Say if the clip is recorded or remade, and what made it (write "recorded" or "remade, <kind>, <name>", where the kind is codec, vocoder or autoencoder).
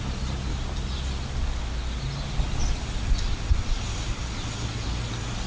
recorded